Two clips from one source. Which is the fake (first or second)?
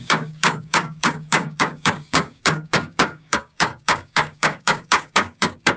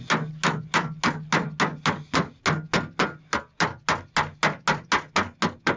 first